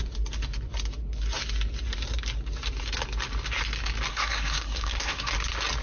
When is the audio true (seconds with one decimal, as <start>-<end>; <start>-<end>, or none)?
0.0-4.1; 5.3-5.8